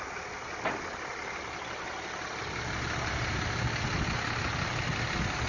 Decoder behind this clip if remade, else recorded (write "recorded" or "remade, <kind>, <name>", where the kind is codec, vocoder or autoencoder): recorded